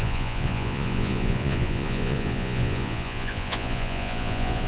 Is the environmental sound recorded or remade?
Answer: remade